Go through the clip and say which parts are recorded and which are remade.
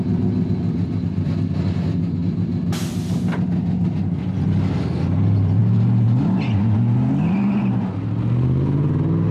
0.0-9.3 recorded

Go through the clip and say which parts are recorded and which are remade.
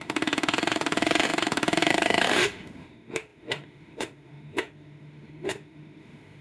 0.0-6.4 remade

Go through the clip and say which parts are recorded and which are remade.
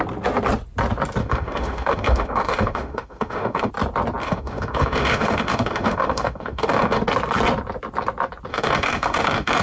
0.0-1.2 recorded; 1.2-3.7 remade; 3.7-4.2 recorded; 4.2-7.0 remade; 7.0-8.5 recorded; 8.5-9.6 remade